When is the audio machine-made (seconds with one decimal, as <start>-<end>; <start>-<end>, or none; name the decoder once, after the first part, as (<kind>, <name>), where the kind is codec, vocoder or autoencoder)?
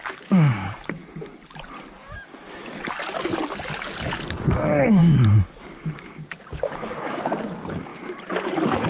0.0-1.0 (codec, DAC); 4.3-5.0; 5.6-7.9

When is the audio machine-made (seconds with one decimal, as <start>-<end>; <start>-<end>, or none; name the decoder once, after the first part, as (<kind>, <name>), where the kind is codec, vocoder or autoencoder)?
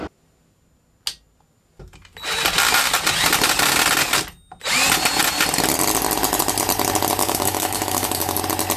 7.2-8.4 (codec, DAC)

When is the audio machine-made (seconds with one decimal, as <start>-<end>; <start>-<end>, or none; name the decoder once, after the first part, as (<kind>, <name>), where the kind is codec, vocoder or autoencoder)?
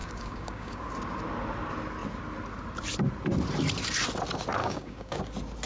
0.0-0.8 (codec, DAC); 4.6-5.2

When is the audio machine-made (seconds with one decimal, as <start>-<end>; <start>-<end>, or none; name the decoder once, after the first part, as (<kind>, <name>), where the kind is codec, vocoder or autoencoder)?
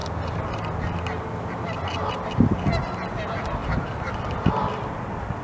none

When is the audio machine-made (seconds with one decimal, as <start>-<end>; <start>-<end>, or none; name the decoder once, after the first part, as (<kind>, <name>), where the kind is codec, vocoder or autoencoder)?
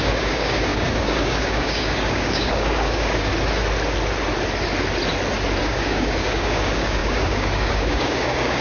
0.0-3.3 (codec, DAC); 5.6-8.6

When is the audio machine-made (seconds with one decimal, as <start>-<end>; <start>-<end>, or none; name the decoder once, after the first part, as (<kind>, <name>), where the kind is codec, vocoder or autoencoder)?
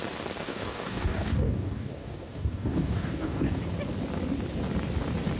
0.4-3.6 (codec, DAC)